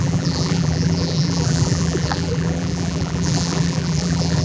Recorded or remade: remade